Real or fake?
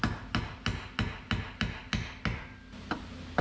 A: real